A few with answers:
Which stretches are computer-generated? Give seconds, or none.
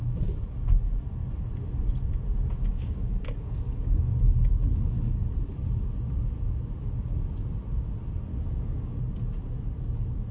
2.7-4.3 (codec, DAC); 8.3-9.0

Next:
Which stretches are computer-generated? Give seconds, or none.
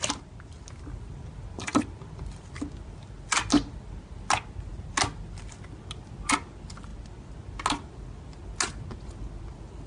none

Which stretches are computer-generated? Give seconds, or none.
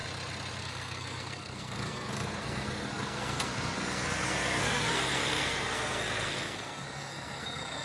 0.6-7.8 (codec, SNAC)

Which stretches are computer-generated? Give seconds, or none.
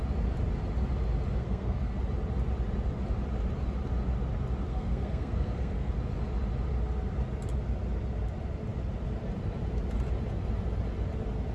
1.4-2.0 (codec, SNAC); 4.7-5.9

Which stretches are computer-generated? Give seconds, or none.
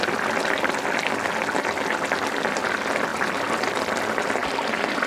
none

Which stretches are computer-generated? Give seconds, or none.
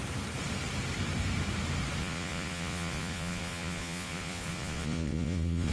2.0-5.7 (vocoder, Vocos)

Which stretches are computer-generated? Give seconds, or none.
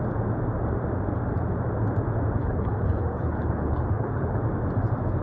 2.4-4.4 (codec, HILCodec)